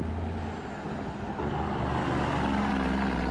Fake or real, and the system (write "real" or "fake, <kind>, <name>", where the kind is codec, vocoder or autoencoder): real